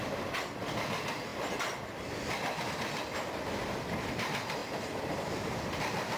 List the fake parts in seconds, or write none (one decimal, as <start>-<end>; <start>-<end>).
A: 4.6-5.5